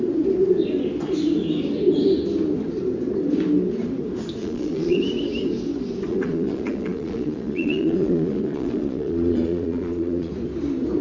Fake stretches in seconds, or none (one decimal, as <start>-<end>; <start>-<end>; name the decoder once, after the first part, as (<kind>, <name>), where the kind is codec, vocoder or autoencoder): 4.4-5.0 (vocoder, Vocos); 6.1-10.3